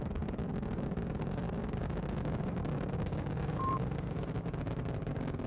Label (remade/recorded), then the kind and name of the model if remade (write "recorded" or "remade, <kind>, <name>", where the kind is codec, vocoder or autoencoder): remade, codec, DAC